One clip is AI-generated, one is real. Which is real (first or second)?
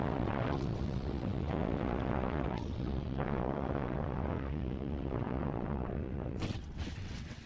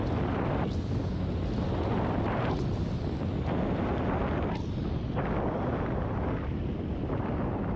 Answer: second